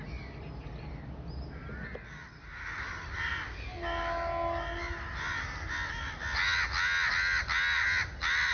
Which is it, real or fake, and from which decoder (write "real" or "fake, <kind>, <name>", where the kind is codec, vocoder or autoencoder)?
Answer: real